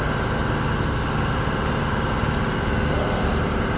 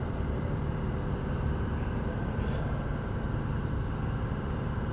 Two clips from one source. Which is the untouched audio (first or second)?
first